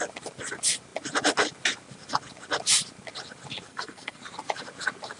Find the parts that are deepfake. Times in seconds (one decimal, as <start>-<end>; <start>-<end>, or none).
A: 3.7-4.2